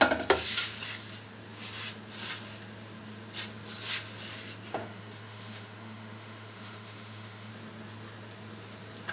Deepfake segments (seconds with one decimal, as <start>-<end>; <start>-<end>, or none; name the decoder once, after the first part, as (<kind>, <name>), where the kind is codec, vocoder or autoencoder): 4.7-7.5 (autoencoder, DAC-VAE)